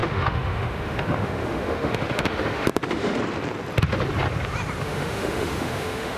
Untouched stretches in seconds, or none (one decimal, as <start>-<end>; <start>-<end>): 3.2-4.8